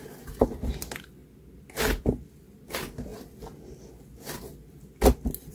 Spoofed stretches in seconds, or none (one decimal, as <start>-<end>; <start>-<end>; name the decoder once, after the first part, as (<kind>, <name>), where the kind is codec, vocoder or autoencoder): none